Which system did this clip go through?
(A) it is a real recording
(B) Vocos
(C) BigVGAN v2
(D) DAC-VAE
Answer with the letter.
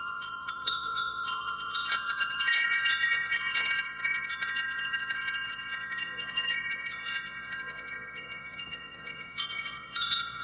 B